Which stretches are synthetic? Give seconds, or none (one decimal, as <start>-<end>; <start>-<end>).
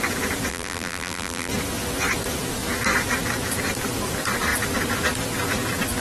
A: 0.5-1.5